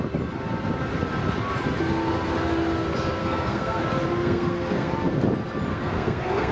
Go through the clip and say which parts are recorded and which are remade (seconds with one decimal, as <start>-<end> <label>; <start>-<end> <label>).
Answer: 0.0-3.2 recorded; 3.2-3.8 remade; 3.8-4.2 recorded; 4.2-4.9 remade; 4.9-5.7 recorded; 5.7-6.5 remade